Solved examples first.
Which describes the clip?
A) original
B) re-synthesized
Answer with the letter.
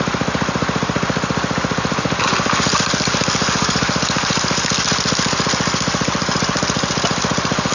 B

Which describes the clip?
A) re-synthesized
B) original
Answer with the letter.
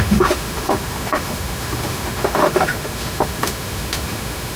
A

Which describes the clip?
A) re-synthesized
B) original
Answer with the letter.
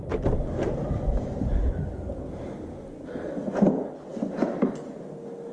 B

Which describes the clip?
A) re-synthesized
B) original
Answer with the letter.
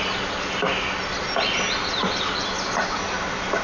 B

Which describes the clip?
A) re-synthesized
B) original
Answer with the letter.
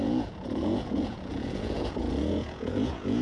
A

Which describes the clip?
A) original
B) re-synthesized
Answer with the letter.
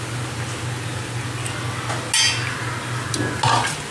A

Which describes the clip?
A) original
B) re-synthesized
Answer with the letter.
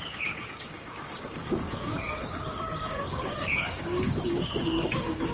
B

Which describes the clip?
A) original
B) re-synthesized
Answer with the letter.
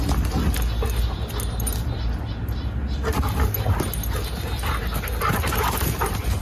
A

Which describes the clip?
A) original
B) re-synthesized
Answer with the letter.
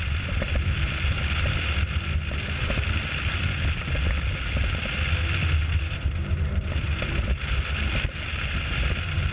A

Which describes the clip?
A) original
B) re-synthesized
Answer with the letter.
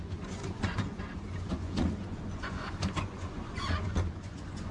B